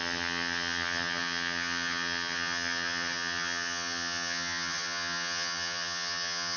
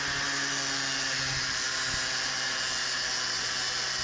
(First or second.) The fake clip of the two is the first